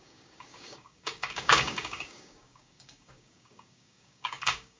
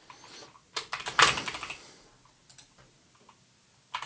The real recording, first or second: second